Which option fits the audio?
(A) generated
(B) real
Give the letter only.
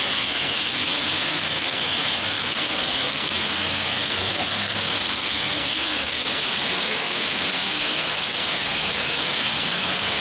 A